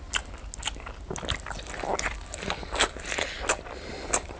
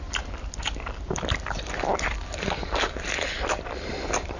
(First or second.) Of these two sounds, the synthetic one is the second